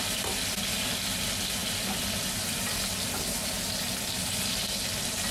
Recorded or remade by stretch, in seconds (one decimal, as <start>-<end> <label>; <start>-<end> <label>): 0.0-5.3 recorded